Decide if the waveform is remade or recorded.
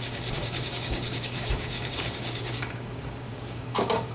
remade